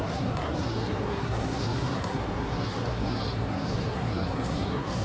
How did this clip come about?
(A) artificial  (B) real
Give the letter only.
A